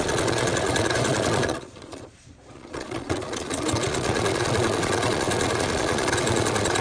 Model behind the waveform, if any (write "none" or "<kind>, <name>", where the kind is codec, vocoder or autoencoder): vocoder, Vocos